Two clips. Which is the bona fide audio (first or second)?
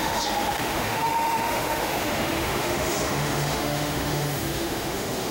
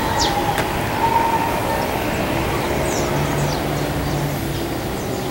second